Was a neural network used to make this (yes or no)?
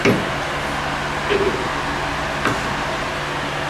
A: no